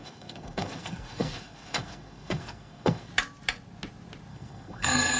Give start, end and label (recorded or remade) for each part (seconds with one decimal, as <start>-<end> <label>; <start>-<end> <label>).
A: 0.0-3.1 remade; 3.1-4.3 recorded; 4.3-5.2 remade